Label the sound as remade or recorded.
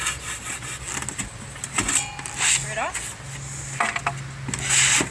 recorded